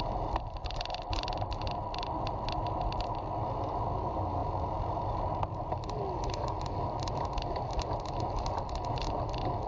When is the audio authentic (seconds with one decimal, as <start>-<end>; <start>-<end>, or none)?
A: 0.0-9.7

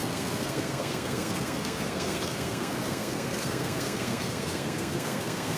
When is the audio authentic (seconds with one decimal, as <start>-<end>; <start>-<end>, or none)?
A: none